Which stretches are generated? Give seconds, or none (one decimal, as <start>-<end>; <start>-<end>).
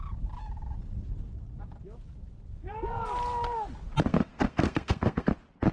4.1-5.3